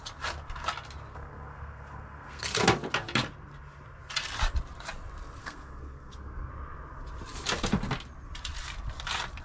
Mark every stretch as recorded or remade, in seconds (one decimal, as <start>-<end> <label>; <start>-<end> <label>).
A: 0.0-1.1 recorded; 1.1-2.4 remade; 2.4-5.4 recorded; 5.4-6.5 remade; 6.5-9.4 recorded